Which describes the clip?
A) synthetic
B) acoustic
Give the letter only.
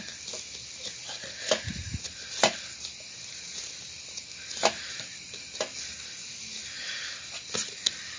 B